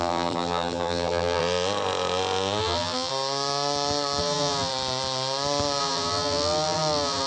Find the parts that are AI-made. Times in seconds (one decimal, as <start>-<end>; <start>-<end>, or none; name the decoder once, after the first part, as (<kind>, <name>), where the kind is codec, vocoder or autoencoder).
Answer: 0.0-1.4 (vocoder, BigVGAN v2); 2.6-3.1; 4.2-4.7; 5.8-7.3